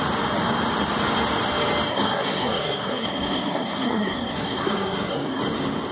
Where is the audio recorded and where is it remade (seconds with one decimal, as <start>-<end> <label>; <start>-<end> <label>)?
0.0-1.9 recorded; 1.9-5.4 remade; 5.4-5.9 recorded

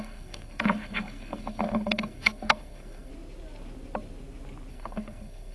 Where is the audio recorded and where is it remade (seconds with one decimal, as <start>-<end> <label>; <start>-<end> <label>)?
0.0-3.1 remade; 3.1-4.7 recorded; 4.7-5.5 remade

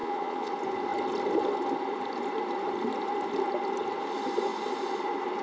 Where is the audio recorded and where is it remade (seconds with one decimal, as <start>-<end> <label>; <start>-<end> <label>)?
0.0-0.5 remade; 0.5-5.4 recorded

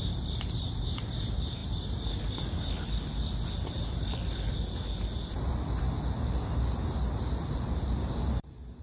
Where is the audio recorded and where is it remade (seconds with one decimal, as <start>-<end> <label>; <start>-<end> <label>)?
0.0-8.8 recorded